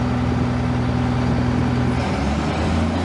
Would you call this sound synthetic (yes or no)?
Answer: no